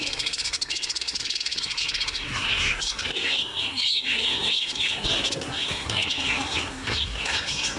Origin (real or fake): fake